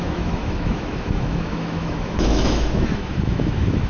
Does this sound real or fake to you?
fake